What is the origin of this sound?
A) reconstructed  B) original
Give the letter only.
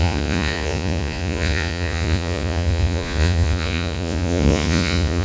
A